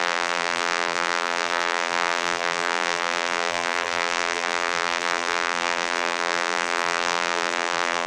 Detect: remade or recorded remade